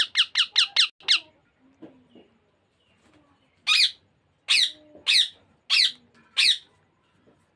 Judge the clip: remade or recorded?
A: recorded